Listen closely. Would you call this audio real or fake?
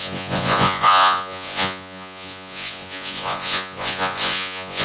fake